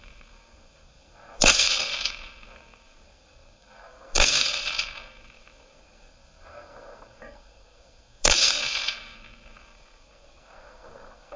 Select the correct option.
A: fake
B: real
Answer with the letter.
A